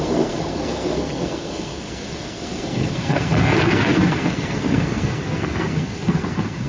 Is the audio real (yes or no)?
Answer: no